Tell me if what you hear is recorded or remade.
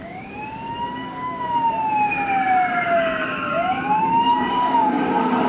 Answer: remade